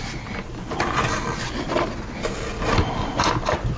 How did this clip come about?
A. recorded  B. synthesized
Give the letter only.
A